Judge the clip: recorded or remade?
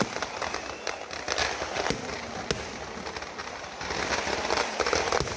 recorded